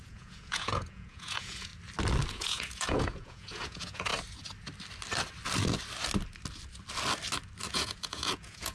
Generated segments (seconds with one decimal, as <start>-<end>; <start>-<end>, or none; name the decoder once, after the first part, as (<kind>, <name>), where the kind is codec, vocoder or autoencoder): 0.0-1.7 (vocoder, Vocos); 2.3-4.1; 7.7-8.7